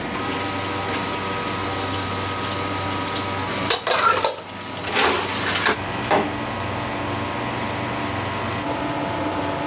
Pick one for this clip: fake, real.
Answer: real